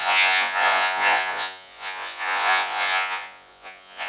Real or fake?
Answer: fake